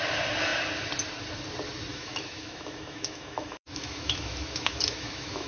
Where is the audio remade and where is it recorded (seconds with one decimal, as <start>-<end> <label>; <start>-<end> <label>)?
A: 0.0-1.9 recorded; 1.9-5.5 remade